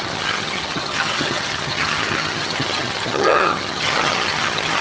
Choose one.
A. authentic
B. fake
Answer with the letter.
B